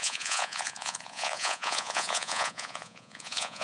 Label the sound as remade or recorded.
remade